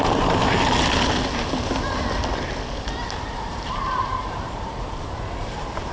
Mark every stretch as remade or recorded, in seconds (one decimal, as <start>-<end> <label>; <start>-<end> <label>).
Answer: 0.0-0.4 remade; 0.4-3.5 recorded; 3.5-5.9 remade